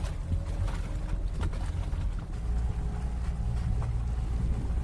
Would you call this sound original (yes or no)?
yes